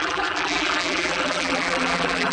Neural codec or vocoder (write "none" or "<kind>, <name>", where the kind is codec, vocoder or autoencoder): vocoder, BigVGAN v2